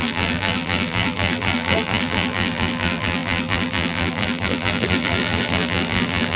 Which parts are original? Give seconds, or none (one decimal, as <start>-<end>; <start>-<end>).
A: none